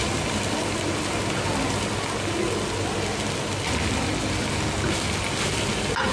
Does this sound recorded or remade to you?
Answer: recorded